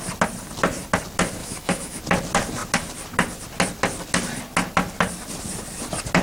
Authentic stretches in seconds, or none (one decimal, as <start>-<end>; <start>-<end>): 0.0-1.4; 2.0-6.2